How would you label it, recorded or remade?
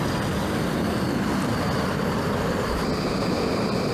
recorded